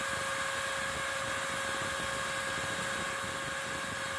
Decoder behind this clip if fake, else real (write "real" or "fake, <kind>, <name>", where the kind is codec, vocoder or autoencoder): real